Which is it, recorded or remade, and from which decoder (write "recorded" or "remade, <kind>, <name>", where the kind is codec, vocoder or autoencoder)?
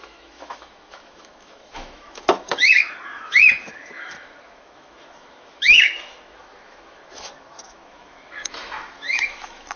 remade, autoencoder, DAC-VAE